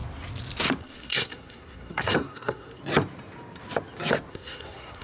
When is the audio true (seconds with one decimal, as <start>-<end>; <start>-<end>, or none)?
0.0-0.8; 2.8-4.3